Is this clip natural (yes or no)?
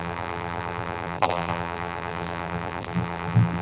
no